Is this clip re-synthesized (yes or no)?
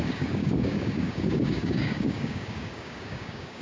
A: yes